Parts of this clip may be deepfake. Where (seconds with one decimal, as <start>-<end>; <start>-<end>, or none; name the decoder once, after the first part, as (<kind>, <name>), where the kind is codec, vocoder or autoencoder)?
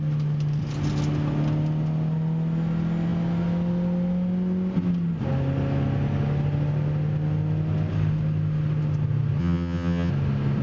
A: 9.4-10.1 (vocoder, HiFi-GAN)